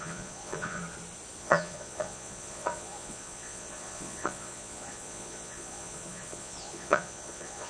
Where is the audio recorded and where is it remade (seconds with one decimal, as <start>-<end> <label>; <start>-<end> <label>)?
0.0-0.8 remade; 0.8-1.4 recorded; 1.4-7.7 remade